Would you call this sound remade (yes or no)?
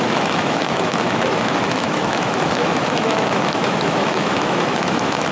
yes